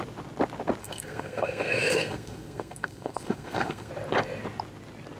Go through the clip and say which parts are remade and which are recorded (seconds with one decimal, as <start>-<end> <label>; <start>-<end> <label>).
0.0-0.8 recorded; 0.8-3.9 remade; 3.9-5.2 recorded